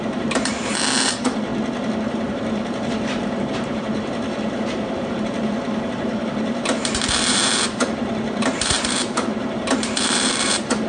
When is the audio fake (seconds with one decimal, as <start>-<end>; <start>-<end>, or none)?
0.0-1.5; 2.1-10.9